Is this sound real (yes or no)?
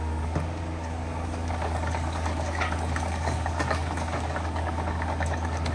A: no